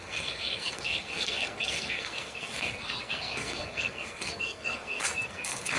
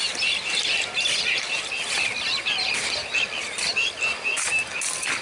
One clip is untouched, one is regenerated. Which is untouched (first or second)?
second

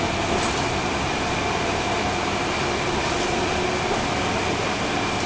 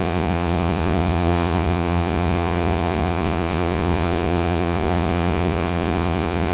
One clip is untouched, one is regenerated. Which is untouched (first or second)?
first